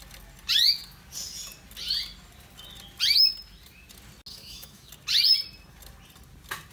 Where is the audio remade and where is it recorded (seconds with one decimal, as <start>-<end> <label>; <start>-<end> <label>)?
0.0-4.3 recorded; 4.3-4.9 remade; 4.9-6.7 recorded